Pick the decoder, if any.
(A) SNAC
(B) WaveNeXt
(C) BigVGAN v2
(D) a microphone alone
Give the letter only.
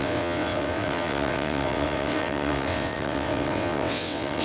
B